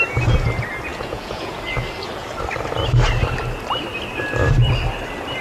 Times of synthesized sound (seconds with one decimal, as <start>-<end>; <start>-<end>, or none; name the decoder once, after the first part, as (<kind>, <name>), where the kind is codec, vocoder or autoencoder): 0.9-1.6 (vocoder, Vocos)